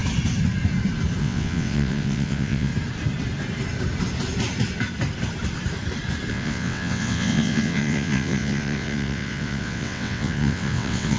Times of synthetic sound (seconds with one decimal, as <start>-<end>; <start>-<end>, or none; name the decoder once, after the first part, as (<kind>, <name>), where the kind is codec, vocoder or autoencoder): 1.2-2.7 (vocoder, WaveNeXt); 6.3-11.2